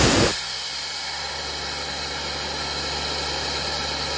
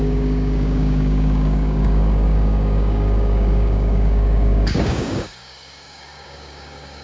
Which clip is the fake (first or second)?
second